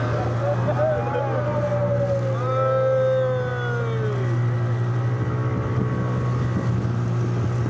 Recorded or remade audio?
recorded